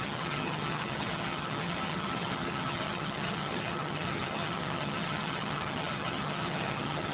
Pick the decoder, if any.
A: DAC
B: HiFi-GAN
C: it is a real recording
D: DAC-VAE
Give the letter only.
B